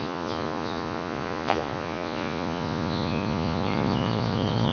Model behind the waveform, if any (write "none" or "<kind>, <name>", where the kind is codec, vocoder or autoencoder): vocoder, Vocos